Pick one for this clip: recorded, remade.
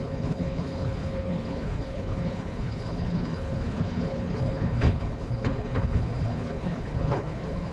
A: remade